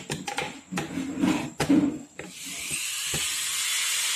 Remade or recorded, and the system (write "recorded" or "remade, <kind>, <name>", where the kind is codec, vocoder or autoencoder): recorded